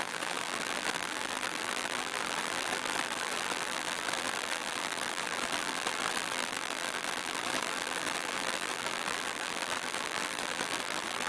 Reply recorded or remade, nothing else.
remade